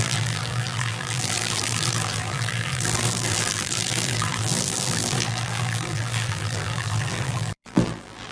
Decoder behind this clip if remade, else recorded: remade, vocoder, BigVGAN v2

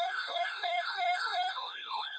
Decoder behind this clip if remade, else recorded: remade, codec, SNAC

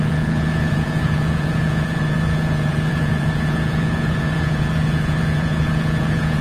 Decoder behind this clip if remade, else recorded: remade, vocoder, Vocos